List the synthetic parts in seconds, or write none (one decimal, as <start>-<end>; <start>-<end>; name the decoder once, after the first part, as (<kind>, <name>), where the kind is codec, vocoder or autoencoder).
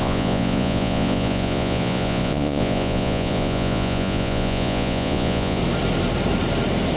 0.0-5.6 (vocoder, Vocos)